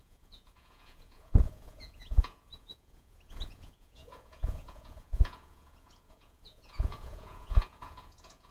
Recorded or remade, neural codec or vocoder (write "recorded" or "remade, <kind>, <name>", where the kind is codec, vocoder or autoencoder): remade, vocoder, Vocos